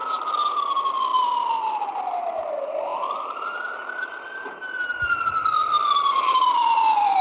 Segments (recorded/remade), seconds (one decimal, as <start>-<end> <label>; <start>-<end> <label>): 0.0-7.2 recorded